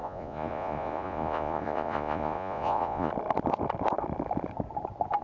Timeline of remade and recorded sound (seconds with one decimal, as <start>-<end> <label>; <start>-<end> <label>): 0.0-3.1 remade; 3.1-5.2 recorded